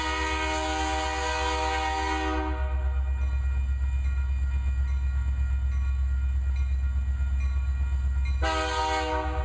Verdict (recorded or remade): recorded